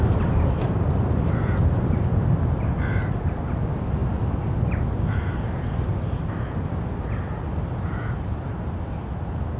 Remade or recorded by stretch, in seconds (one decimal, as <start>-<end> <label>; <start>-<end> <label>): 0.0-9.6 recorded